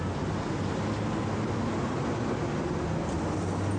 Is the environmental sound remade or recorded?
recorded